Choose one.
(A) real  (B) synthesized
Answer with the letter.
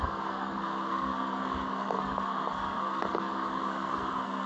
B